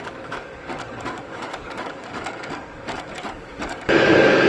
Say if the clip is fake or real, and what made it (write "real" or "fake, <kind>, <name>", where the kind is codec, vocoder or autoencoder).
fake, codec, DAC